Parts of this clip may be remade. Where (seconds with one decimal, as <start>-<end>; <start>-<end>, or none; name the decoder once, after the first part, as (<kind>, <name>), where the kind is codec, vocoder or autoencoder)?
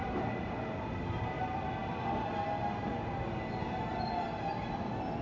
none